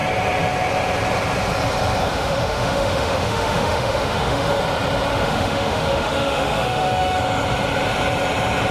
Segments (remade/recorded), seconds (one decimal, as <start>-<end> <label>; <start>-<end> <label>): 0.0-2.0 recorded; 2.0-4.6 remade; 4.6-5.1 recorded; 5.1-7.2 remade; 7.2-8.7 recorded

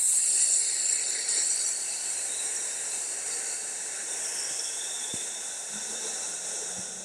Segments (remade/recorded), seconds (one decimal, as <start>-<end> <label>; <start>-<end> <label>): 0.0-7.0 recorded

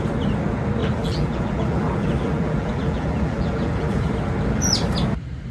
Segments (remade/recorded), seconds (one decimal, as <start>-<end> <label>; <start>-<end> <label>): 0.0-0.8 recorded; 0.8-4.1 remade; 4.1-5.5 recorded

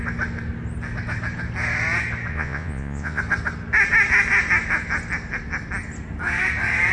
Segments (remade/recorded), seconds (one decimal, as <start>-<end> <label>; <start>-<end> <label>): 0.0-2.3 recorded; 2.3-3.2 remade; 3.2-6.9 recorded

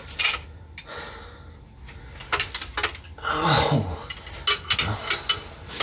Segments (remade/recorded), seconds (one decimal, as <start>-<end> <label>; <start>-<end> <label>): 0.0-5.8 recorded